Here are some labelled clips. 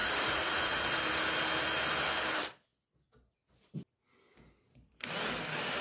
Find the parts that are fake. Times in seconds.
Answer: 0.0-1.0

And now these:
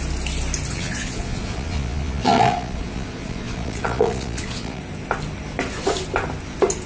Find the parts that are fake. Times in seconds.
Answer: 0.7-4.8

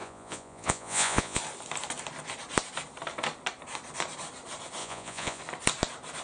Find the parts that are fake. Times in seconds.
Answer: 0.0-1.4; 4.8-5.4

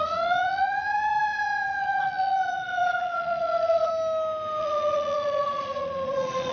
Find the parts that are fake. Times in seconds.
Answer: 0.0-3.9; 4.6-6.5